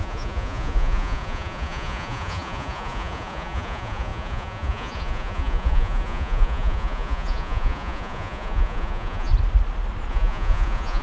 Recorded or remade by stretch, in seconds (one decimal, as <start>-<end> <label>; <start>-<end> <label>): 0.0-9.3 remade; 9.3-10.1 recorded; 10.1-11.0 remade